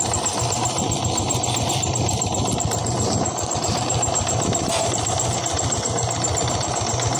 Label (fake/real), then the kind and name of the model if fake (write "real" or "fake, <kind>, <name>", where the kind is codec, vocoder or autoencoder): fake, vocoder, BigVGAN v2